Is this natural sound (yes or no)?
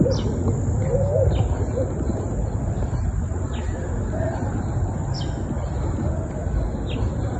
yes